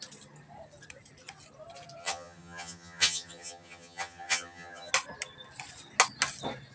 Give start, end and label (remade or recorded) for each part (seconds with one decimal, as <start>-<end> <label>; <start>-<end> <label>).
0.0-2.0 recorded; 2.0-4.9 remade; 4.9-6.7 recorded